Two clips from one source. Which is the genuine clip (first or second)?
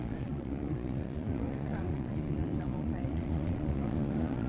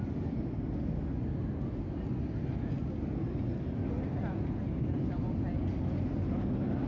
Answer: second